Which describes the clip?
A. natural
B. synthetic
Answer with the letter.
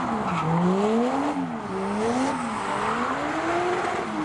A